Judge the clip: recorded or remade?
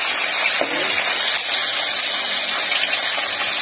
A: recorded